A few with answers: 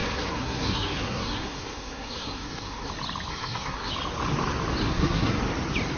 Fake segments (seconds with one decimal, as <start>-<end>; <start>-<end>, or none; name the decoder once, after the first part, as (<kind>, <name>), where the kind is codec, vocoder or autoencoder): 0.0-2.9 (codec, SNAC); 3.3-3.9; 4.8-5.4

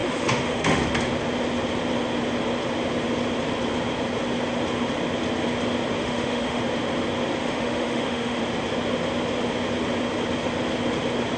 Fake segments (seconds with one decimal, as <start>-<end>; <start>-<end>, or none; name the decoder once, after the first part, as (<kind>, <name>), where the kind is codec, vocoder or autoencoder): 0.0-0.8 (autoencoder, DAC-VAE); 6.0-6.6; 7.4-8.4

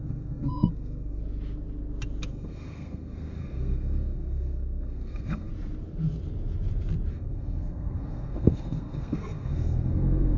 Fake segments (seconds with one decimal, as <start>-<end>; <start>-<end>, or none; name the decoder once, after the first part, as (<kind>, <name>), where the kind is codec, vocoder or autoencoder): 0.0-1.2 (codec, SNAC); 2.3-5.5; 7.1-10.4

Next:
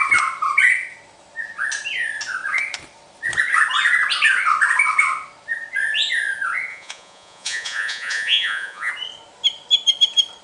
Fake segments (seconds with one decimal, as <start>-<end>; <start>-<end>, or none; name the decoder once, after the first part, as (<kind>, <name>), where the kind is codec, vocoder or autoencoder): 6.7-8.9 (vocoder, Vocos)

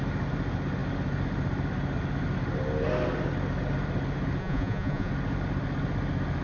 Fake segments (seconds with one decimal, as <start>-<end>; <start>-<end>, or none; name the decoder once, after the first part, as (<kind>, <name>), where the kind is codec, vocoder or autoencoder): 4.4-5.1 (vocoder, Vocos)

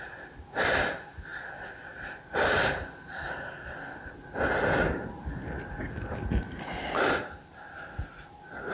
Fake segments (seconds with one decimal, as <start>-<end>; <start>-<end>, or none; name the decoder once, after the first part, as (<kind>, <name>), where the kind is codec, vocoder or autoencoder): none